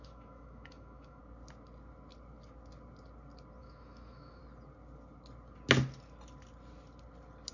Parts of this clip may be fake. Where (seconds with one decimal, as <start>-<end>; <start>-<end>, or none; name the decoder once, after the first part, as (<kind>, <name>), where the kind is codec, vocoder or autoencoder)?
0.0-1.2 (autoencoder, DAC-VAE); 3.6-4.4